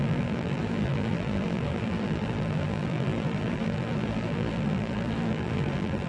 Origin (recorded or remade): remade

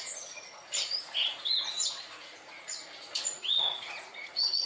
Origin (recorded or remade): remade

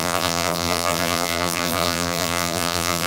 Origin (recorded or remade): remade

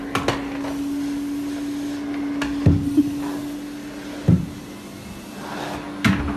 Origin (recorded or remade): recorded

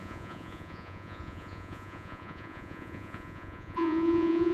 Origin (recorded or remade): remade